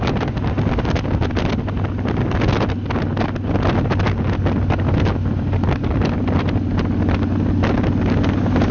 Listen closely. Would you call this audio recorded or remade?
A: recorded